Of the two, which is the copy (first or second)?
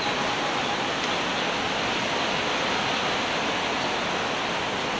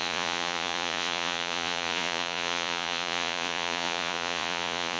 second